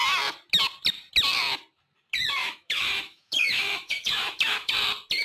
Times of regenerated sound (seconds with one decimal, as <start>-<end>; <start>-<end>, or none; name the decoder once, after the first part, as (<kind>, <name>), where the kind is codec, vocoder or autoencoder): 2.4-4.7 (autoencoder, DAC-VAE)